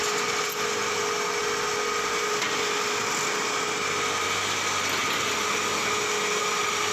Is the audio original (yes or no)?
yes